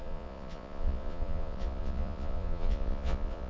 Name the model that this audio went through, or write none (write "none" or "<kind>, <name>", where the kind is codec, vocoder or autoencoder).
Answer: vocoder, Vocos